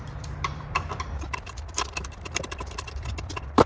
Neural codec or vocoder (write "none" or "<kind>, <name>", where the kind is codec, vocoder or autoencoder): vocoder, BigVGAN v2